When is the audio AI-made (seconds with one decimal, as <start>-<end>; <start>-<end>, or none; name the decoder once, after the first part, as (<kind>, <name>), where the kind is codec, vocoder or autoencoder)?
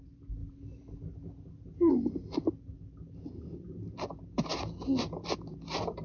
none